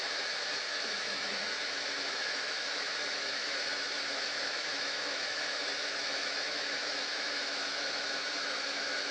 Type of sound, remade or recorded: remade